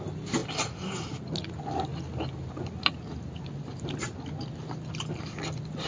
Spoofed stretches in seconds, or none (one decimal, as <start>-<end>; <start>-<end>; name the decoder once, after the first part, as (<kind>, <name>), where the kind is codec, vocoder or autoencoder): none